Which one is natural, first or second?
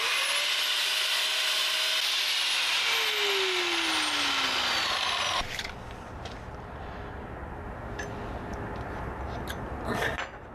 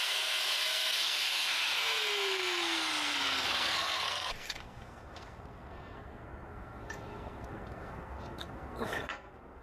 first